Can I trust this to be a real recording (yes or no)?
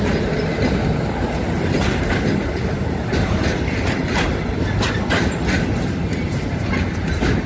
yes